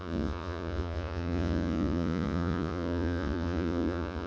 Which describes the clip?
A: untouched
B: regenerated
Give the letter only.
B